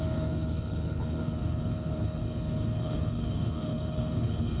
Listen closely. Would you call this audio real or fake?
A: fake